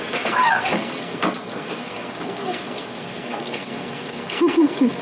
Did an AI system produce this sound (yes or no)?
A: yes